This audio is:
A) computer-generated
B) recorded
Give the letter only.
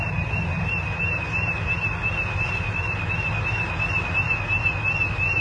B